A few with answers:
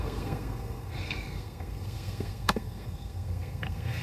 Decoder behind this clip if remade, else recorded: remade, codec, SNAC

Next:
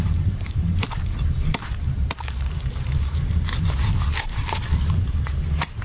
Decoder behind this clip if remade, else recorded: remade, vocoder, BigVGAN v2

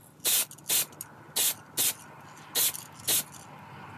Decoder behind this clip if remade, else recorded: recorded